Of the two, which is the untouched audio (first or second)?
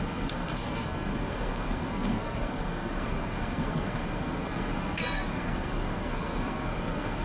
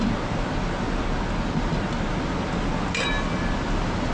second